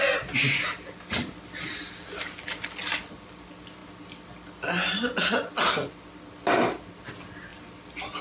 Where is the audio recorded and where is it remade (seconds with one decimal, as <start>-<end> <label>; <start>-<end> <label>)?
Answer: 0.0-8.2 recorded